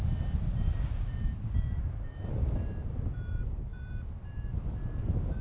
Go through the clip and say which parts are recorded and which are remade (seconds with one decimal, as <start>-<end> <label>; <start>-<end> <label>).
0.0-5.4 recorded